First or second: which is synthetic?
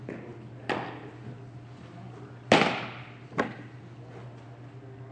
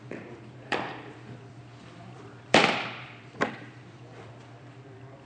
second